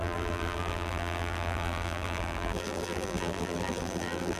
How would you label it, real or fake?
fake